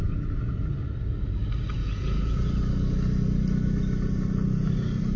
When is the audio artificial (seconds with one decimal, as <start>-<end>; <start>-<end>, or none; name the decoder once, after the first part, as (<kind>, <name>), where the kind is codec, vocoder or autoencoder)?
1.8-2.5 (vocoder, Vocos)